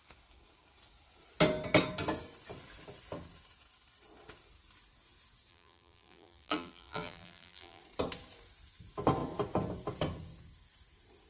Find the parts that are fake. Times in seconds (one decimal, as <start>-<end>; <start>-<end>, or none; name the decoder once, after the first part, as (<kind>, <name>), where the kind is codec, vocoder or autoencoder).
5.5-7.8 (vocoder, BigVGAN v2)